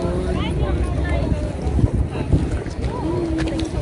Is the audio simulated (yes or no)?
no